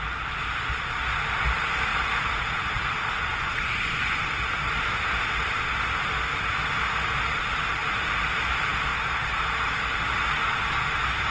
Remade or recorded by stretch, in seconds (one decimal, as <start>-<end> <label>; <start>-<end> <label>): 0.0-3.3 recorded; 3.3-4.3 remade; 4.3-11.3 recorded

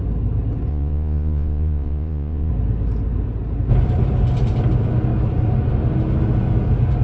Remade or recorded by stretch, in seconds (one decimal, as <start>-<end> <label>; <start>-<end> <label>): 0.0-0.7 recorded; 0.7-2.5 remade; 2.5-7.0 recorded

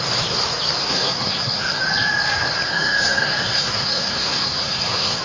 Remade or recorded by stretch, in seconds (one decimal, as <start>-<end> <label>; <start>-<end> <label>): 0.0-0.8 recorded; 0.8-1.8 remade; 1.8-2.7 recorded; 2.7-5.2 remade